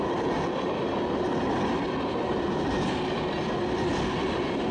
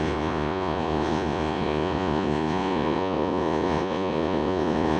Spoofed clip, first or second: second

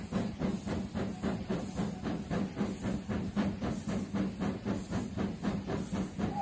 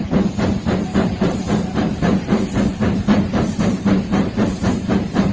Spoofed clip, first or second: second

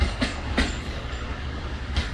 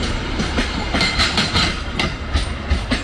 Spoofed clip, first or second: first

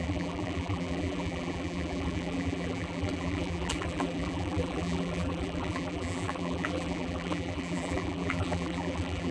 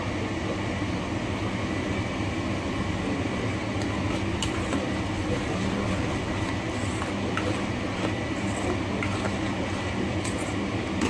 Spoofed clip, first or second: first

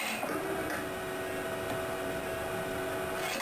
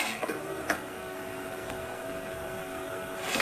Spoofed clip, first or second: second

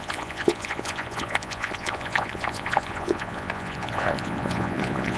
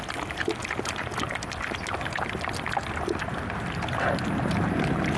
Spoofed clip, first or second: first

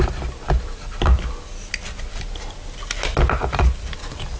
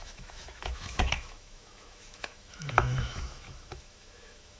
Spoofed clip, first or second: second